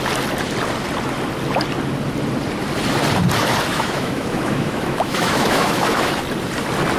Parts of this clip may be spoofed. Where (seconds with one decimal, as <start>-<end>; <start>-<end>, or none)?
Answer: 3.7-6.2